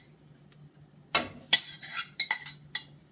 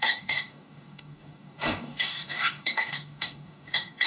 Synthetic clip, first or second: second